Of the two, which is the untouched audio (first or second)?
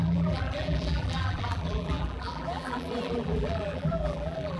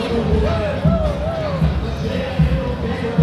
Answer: second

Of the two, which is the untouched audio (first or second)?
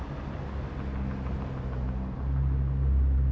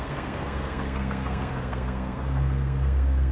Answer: first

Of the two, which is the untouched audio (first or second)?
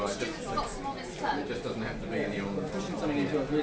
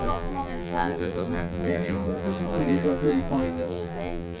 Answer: first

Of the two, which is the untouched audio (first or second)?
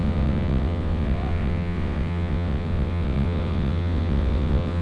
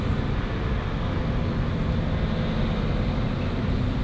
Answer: second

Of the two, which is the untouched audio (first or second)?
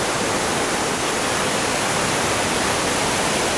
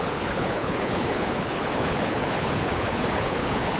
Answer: first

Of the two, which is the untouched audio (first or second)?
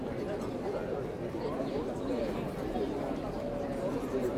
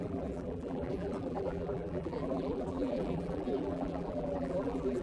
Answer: first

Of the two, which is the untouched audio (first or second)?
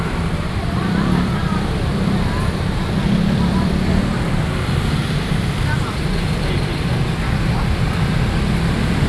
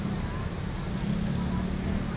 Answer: second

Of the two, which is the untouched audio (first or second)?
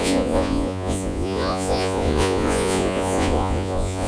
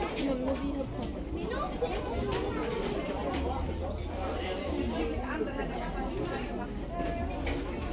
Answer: second